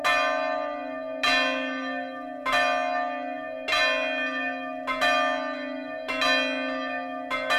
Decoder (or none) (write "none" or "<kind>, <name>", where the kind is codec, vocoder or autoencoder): none